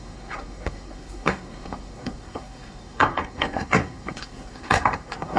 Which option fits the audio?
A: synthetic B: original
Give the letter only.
A